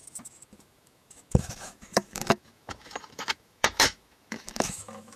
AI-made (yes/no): yes